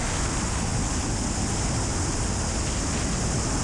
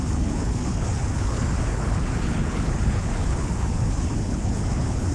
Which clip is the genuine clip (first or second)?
first